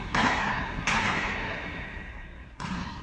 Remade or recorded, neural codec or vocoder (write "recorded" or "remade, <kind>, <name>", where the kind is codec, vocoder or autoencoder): remade, codec, SNAC